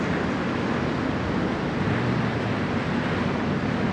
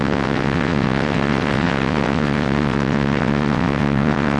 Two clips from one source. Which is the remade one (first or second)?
second